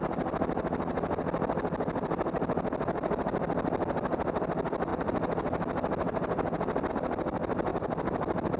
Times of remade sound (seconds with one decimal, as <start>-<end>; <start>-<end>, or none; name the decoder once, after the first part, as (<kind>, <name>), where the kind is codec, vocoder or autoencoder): none